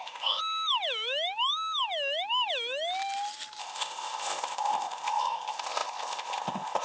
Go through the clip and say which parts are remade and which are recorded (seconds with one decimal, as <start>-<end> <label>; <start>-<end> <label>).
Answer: 0.0-0.4 remade; 0.4-3.6 recorded; 3.6-6.8 remade